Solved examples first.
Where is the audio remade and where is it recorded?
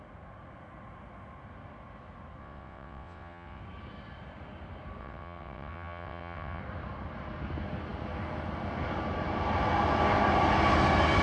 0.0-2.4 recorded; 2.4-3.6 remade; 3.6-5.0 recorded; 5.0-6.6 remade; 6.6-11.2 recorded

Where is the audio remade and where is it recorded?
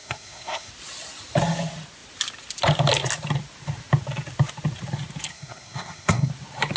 0.0-0.7 remade; 0.7-5.3 recorded; 5.3-6.3 remade; 6.3-6.8 recorded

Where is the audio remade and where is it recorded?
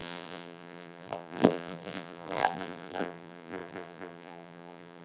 0.0-5.0 remade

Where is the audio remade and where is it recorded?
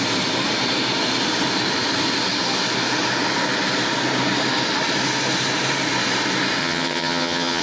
0.0-6.6 recorded; 6.6-7.6 remade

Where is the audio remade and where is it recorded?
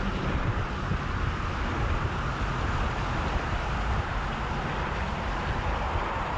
0.0-0.9 remade; 0.9-4.7 recorded; 4.7-6.4 remade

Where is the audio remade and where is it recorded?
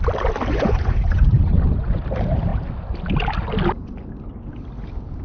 0.0-0.5 recorded; 0.5-2.0 remade; 2.0-5.2 recorded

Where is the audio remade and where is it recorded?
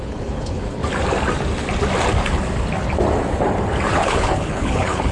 0.0-0.8 remade; 0.8-3.9 recorded; 3.9-5.1 remade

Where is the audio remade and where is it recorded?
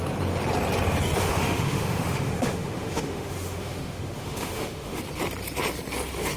0.0-1.2 recorded; 1.2-5.0 remade; 5.0-6.4 recorded